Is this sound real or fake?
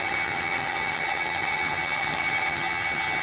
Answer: fake